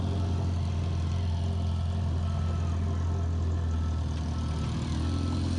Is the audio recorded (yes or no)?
yes